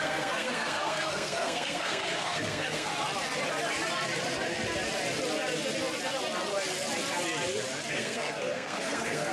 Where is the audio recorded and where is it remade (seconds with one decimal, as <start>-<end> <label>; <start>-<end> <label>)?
0.0-2.9 remade; 2.9-7.9 recorded; 7.9-9.3 remade